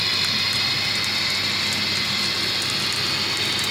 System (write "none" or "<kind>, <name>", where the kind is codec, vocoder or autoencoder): none